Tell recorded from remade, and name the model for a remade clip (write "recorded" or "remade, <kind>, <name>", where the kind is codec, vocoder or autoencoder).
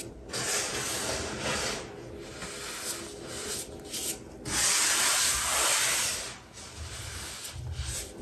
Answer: recorded